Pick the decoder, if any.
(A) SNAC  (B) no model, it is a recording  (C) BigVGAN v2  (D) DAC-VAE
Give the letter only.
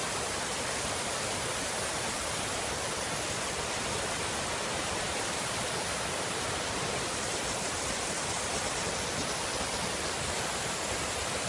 B